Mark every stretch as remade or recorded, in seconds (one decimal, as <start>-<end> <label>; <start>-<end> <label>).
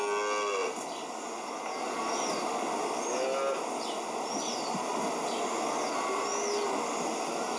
0.0-7.6 recorded